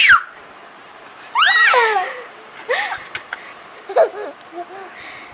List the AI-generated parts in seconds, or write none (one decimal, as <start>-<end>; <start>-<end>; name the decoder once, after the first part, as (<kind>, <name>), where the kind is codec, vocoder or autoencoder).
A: 0.8-4.0 (vocoder, BigVGAN v2)